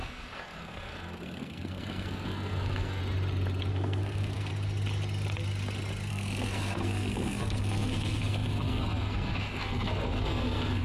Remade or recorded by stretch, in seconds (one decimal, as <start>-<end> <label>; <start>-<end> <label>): 0.0-3.0 remade; 3.0-3.7 recorded; 3.7-4.5 remade; 4.5-6.1 recorded; 6.1-10.8 remade